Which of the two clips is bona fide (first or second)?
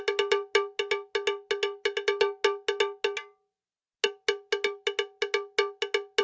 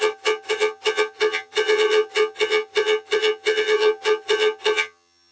first